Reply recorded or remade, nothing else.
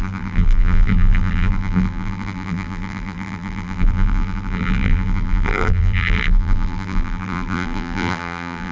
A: remade